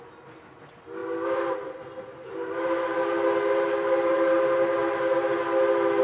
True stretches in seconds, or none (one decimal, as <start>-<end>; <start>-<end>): 0.0-6.0